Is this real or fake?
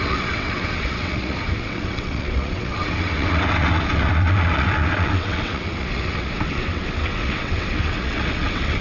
fake